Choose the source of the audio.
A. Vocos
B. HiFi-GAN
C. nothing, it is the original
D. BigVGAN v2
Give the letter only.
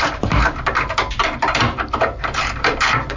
D